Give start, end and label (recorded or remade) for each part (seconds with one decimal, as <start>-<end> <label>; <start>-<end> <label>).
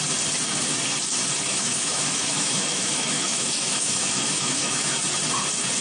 0.0-1.5 recorded; 1.5-5.0 remade; 5.0-5.8 recorded